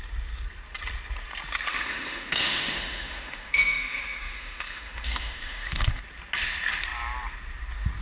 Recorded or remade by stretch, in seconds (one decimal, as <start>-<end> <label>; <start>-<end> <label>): 0.0-1.7 recorded; 1.7-6.0 remade; 6.0-8.0 recorded